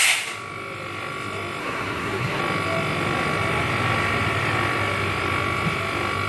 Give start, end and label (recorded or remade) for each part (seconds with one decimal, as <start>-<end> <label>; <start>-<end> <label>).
0.0-1.6 recorded; 1.6-2.4 remade; 2.4-6.3 recorded

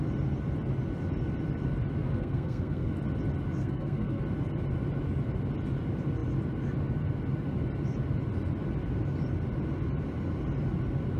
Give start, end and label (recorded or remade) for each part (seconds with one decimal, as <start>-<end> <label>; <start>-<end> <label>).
0.0-2.0 recorded; 2.0-2.9 remade; 2.9-3.6 recorded; 3.6-4.2 remade; 4.2-11.2 recorded

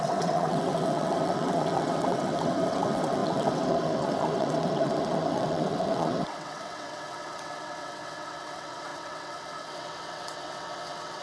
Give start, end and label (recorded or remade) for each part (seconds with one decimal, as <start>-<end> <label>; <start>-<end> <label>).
0.0-11.2 remade

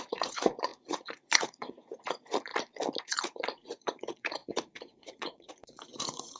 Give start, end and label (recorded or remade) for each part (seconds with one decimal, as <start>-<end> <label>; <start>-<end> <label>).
0.0-2.5 remade; 2.5-3.0 recorded; 3.0-6.4 remade